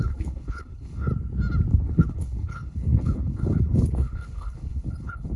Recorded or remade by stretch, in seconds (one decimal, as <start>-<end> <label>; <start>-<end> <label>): 0.0-1.1 remade; 1.1-1.7 recorded; 1.7-5.4 remade